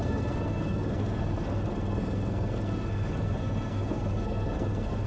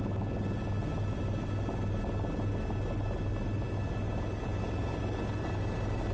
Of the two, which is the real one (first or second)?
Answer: second